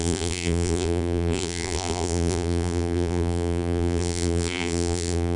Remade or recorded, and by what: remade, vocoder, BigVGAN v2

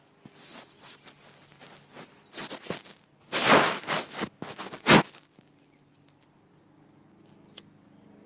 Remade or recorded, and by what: recorded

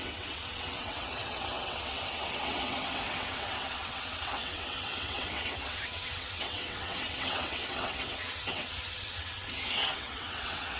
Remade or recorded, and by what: remade, vocoder, WaveNeXt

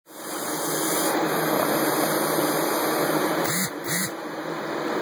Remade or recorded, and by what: remade, vocoder, BigVGAN v2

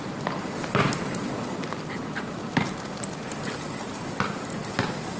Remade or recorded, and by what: remade, vocoder, BigVGAN v2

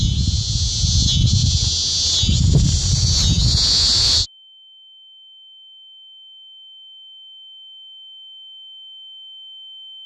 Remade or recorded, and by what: recorded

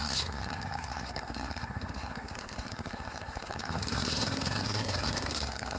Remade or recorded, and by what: remade, codec, SNAC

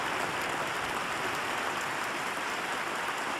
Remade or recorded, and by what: recorded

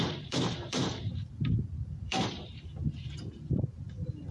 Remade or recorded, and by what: remade, vocoder, BigVGAN v2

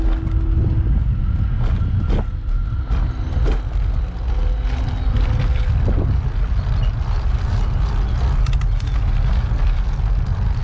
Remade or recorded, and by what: recorded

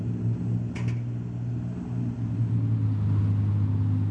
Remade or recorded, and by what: recorded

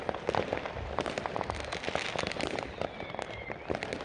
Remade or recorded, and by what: recorded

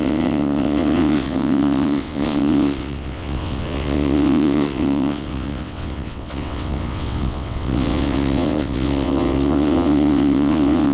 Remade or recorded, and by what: remade, vocoder, WaveNeXt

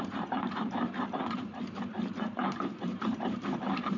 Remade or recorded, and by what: remade, vocoder, BigVGAN v2